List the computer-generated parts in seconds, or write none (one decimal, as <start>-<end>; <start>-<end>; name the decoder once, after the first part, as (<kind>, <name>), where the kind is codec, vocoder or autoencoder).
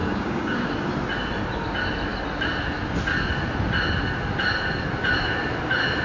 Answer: 0.0-0.7 (codec, DAC)